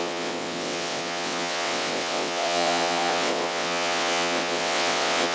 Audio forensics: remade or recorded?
remade